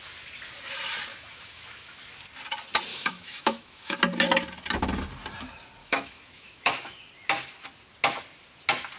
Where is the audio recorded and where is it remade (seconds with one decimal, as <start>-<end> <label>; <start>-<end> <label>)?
0.0-1.1 recorded; 1.1-2.0 remade; 2.0-2.9 recorded; 2.9-4.0 remade; 4.0-5.8 recorded; 5.8-7.0 remade; 7.0-9.0 recorded